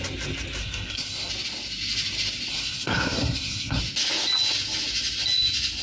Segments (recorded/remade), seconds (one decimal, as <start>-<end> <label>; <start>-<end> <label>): 0.0-0.6 recorded; 0.6-1.3 remade; 1.3-2.5 recorded; 2.5-3.8 remade; 3.8-5.8 recorded